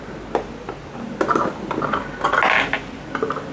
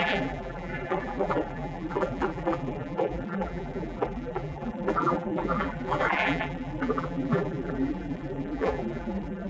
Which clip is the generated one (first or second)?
second